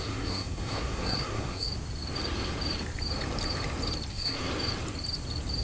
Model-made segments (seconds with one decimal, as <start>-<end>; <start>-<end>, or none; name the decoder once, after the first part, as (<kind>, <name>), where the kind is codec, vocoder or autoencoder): 0.0-1.7 (codec, SNAC); 4.1-4.5